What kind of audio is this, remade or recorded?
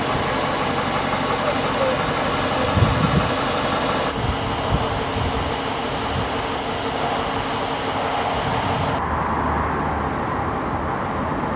recorded